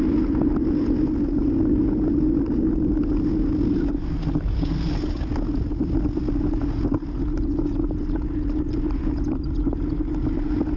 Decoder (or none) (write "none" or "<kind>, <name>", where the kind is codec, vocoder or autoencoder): none